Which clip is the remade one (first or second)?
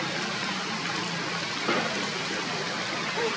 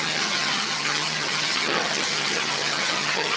second